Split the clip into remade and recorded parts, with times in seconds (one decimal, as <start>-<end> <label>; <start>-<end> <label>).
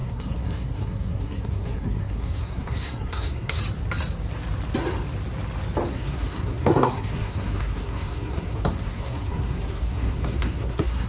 0.0-3.6 remade; 3.6-5.9 recorded; 5.9-11.1 remade